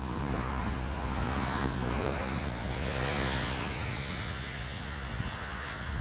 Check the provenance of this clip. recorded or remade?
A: remade